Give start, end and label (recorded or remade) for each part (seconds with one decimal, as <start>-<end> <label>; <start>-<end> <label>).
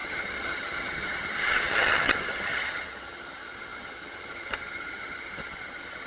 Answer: 0.0-6.1 remade